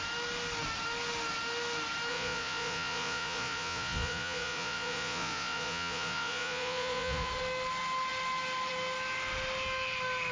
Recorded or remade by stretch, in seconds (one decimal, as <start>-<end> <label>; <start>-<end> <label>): 0.0-2.1 recorded; 2.1-7.3 remade; 7.3-10.3 recorded